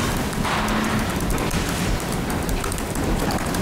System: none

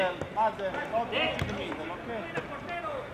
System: none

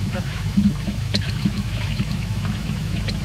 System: autoencoder, DAC-VAE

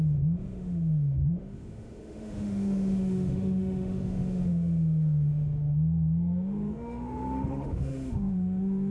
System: autoencoder, DAC-VAE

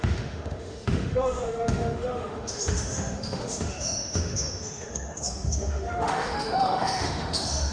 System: autoencoder, DAC-VAE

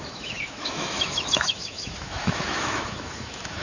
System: autoencoder, DAC-VAE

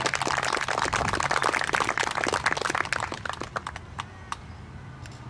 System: none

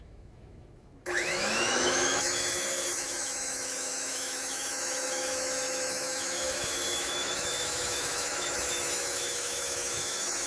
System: autoencoder, DAC-VAE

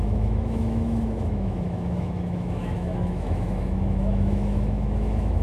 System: autoencoder, DAC-VAE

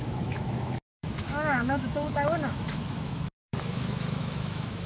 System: autoencoder, DAC-VAE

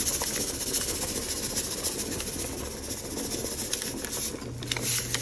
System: none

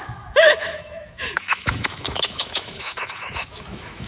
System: autoencoder, DAC-VAE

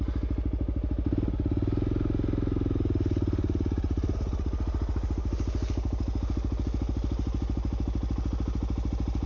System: none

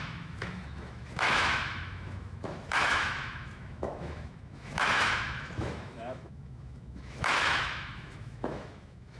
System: autoencoder, DAC-VAE